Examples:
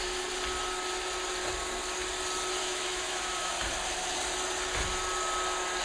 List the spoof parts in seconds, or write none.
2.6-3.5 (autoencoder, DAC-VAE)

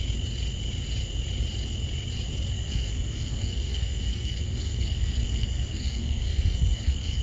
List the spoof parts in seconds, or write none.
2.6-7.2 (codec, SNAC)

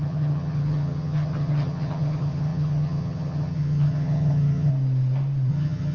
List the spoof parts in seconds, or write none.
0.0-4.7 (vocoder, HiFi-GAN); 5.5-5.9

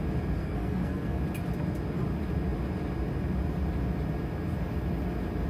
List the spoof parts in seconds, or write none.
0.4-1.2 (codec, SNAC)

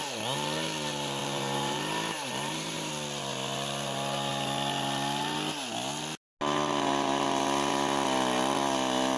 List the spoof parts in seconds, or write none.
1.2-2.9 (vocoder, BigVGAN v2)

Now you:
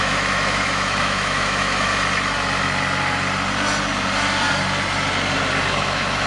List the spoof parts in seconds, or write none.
0.0-1.9 (autoencoder, DAC-VAE); 5.7-6.3